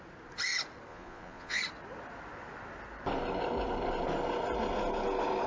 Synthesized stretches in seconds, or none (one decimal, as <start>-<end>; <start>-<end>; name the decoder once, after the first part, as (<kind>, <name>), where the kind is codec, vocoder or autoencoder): 0.9-1.6 (vocoder, Vocos)